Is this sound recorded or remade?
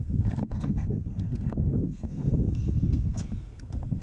remade